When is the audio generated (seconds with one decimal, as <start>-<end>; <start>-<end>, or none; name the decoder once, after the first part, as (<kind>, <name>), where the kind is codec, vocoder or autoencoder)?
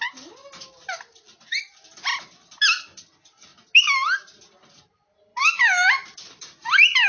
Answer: 0.4-1.2 (vocoder, BigVGAN v2); 5.3-7.1